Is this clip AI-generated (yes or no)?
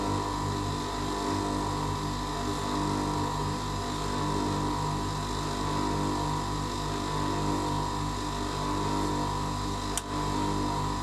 no